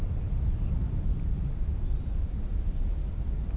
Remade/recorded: recorded